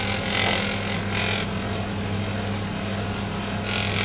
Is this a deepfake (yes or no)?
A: no